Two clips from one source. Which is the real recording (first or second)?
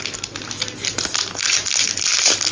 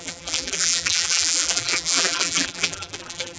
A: first